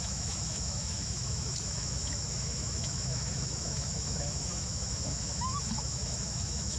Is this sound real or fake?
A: fake